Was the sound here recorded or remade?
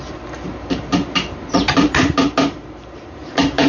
remade